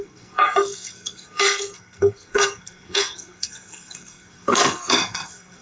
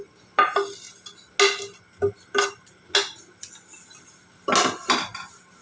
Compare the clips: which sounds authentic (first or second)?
second